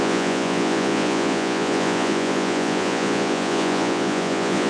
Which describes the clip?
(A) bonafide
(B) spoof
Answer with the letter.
B